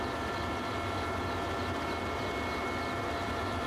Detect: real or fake real